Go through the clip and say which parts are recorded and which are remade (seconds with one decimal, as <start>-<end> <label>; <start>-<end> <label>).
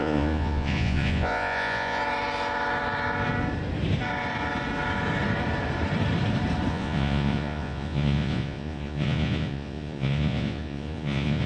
0.0-2.0 remade; 2.0-6.7 recorded; 6.7-11.5 remade